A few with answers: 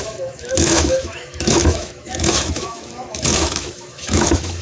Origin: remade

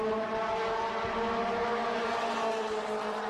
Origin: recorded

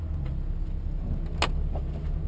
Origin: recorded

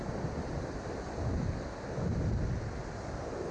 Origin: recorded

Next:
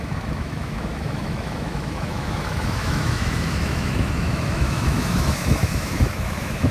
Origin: remade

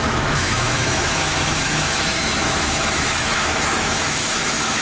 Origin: remade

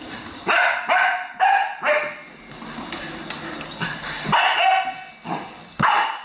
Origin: recorded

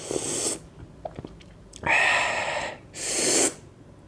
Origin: recorded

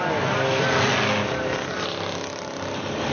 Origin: recorded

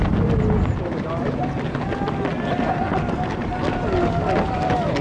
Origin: recorded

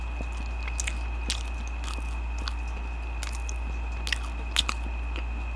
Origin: recorded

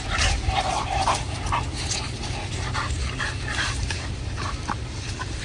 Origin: recorded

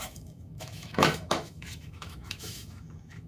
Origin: remade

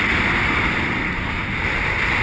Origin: recorded